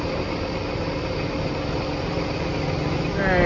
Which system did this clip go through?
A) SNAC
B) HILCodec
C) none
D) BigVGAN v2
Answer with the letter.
C